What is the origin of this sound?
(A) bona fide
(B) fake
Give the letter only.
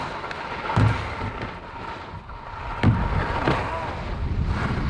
A